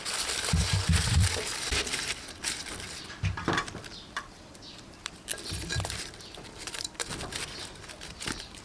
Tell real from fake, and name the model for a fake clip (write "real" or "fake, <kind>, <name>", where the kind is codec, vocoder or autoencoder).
fake, vocoder, BigVGAN v2